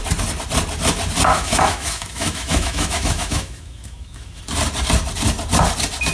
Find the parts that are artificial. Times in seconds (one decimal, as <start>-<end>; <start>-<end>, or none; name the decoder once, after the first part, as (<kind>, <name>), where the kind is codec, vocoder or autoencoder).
1.3-4.4 (autoencoder, DAC-VAE)

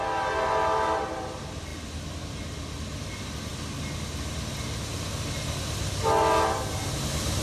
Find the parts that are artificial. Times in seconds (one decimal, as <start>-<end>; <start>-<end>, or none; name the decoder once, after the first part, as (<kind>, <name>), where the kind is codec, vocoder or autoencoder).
none